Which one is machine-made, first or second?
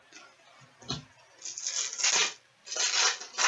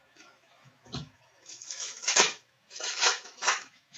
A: second